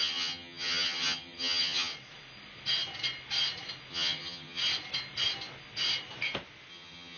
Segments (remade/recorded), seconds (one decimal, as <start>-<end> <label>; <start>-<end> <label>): 0.0-1.9 remade; 1.9-3.9 recorded; 3.9-4.6 remade; 4.6-6.7 recorded; 6.7-7.2 remade